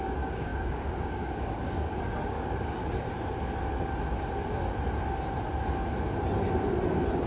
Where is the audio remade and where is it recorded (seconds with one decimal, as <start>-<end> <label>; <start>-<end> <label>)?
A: 0.0-2.8 remade; 2.8-7.3 recorded